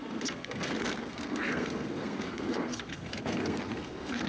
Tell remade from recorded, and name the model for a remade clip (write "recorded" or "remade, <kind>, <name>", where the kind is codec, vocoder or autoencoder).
remade, codec, SNAC